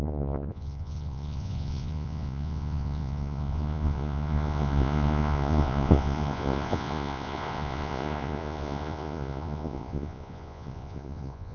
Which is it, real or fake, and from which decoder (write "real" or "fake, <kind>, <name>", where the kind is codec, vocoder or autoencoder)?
fake, vocoder, Vocos